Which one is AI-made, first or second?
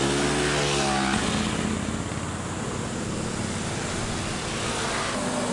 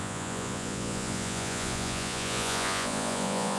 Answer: second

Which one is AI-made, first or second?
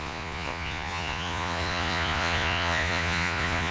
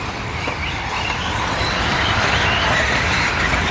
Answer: first